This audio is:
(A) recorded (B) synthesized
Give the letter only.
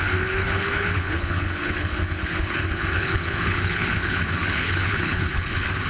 B